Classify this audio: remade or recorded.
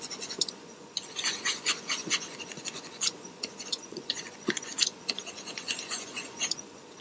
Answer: remade